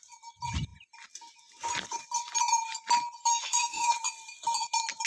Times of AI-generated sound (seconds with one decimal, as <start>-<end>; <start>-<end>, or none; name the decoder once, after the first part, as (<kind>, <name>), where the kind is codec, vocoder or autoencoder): 3.3-3.9 (autoencoder, DAC-VAE)